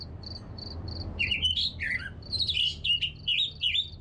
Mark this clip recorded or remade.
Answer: recorded